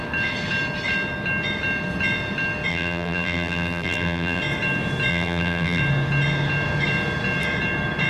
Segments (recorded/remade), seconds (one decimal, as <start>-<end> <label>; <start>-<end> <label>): 0.0-2.7 recorded; 2.7-4.4 remade; 4.4-5.1 recorded; 5.1-5.8 remade; 5.8-8.1 recorded